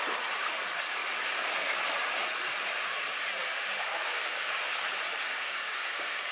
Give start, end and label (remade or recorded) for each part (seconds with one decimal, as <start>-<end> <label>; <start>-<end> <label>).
0.0-3.4 recorded; 3.4-4.7 remade; 4.7-5.2 recorded; 5.2-6.3 remade